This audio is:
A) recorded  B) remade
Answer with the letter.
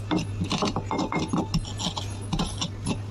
A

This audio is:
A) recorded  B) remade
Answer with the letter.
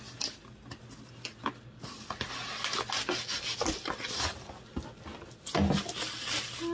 A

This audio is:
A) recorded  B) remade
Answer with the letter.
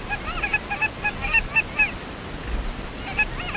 A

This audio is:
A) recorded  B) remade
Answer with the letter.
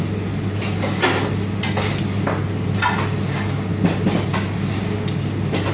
A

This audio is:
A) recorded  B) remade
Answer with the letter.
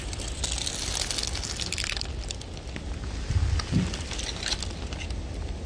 A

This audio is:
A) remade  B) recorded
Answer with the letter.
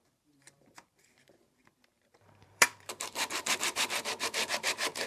A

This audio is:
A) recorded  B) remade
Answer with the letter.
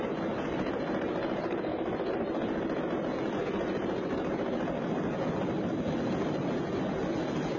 A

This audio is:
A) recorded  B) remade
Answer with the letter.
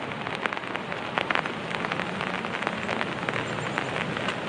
A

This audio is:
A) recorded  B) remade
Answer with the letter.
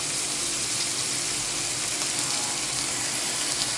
B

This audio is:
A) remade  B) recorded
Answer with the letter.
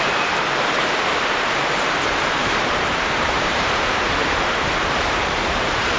A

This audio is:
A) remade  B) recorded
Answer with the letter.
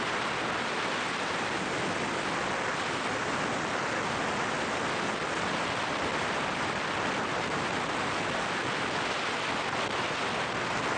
B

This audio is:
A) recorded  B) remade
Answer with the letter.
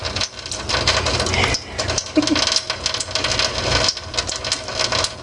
A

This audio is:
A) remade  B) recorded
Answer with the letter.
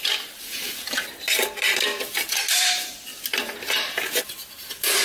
A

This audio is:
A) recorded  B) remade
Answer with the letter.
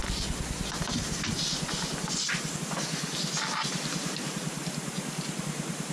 A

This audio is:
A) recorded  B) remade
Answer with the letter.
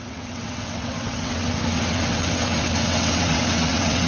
B